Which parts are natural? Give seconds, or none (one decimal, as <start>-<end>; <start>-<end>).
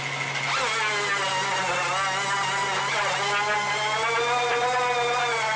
0.0-5.6